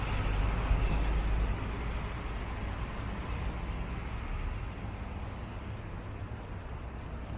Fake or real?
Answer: real